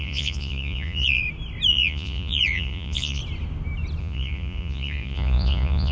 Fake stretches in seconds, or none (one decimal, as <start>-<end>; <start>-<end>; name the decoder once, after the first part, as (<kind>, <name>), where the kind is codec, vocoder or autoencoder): 0.0-1.2 (vocoder, Vocos); 1.7-3.2; 4.0-5.9